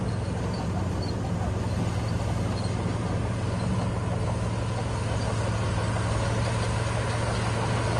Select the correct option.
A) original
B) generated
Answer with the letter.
A